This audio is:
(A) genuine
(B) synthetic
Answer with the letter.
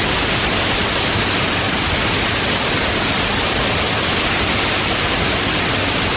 A